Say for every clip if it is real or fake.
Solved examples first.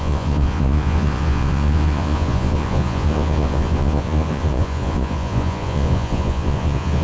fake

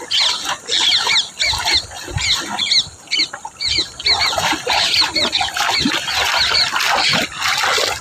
real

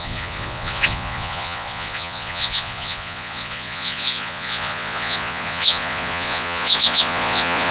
fake